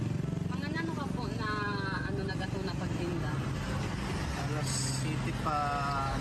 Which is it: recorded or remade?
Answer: recorded